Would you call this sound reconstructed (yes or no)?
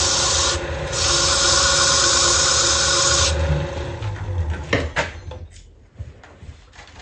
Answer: no